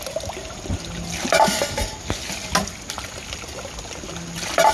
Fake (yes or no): no